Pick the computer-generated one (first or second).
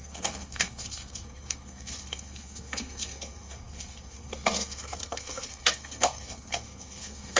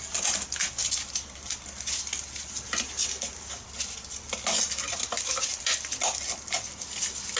first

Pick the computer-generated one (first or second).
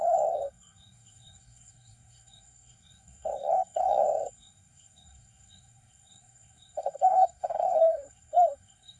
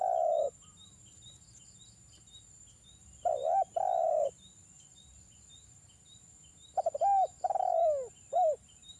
first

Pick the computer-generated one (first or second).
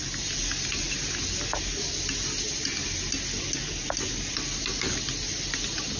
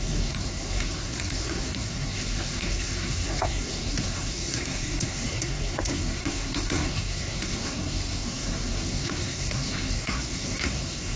second